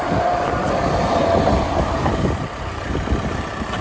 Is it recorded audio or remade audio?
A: remade